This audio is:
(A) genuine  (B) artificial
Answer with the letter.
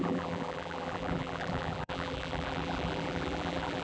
B